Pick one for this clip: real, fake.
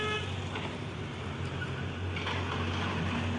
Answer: real